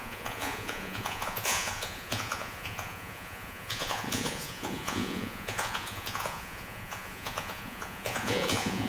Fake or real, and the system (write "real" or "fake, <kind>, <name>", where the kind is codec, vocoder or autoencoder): fake, vocoder, Vocos